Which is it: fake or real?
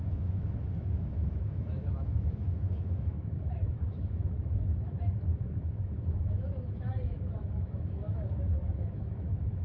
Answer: fake